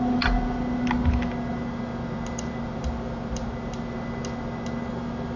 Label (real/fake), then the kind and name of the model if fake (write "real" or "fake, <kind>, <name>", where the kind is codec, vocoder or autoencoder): real